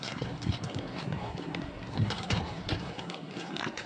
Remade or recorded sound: remade